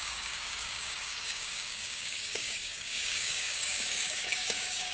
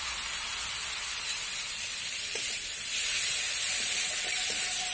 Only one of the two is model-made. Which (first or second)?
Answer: first